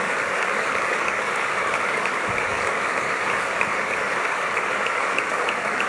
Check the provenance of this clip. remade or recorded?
remade